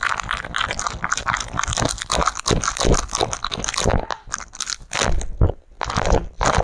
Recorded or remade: recorded